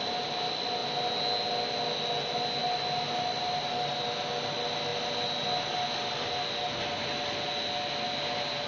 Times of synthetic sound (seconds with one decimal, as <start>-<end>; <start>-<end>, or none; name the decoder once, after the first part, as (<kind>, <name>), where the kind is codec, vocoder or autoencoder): none